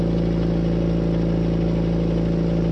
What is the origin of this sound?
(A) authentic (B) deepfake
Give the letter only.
A